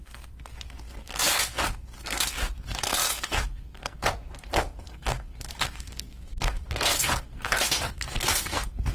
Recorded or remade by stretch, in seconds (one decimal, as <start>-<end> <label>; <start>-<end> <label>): 0.0-8.9 remade